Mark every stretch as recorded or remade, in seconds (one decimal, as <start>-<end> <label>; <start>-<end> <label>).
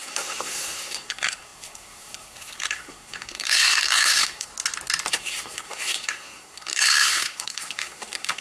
0.0-4.5 remade; 4.5-5.1 recorded; 5.1-8.4 remade